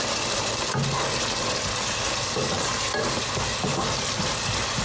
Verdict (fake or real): real